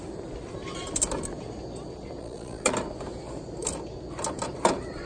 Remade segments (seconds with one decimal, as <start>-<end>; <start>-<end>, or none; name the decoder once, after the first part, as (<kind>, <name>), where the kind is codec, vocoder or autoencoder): 2.2-2.7 (vocoder, Vocos)